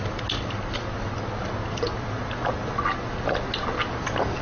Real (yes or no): yes